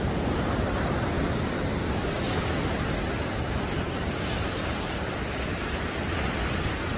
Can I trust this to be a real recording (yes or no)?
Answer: yes